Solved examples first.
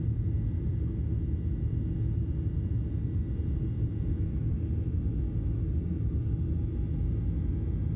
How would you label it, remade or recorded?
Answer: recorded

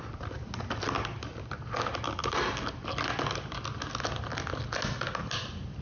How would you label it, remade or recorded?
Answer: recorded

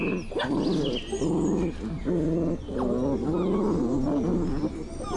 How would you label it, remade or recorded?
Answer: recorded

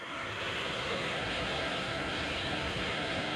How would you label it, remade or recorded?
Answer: remade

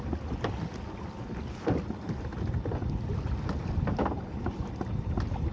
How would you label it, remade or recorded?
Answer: recorded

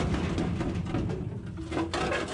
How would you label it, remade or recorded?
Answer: recorded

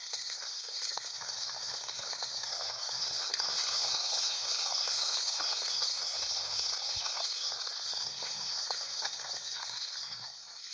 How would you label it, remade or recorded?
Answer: remade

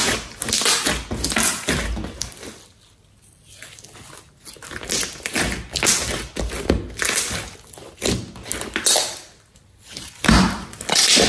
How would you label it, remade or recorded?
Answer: recorded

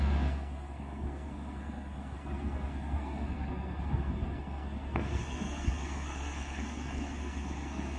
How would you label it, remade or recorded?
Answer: remade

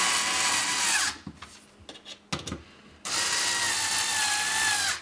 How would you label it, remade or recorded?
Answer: recorded